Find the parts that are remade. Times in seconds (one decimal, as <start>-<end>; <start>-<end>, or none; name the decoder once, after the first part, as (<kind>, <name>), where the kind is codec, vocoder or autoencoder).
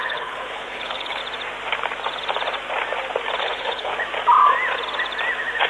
0.0-1.2 (codec, HILCodec); 3.4-3.9